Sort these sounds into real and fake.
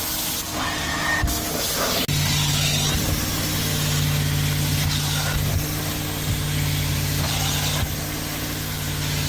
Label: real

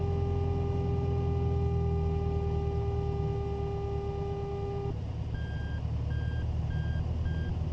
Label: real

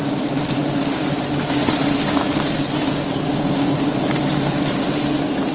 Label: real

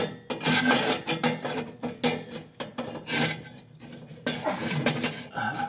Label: real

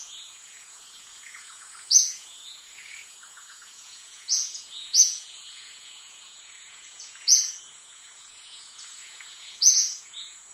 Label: fake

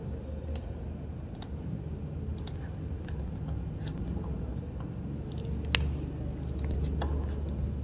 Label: real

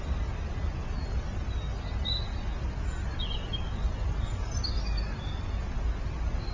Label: real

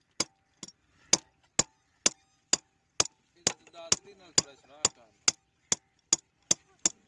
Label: real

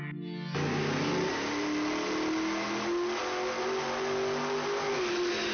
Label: real